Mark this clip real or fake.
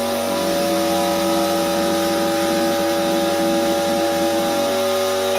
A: real